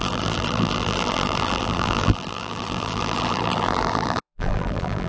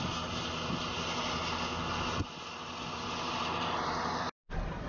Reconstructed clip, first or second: first